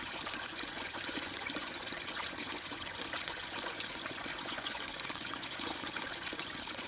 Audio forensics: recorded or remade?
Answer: remade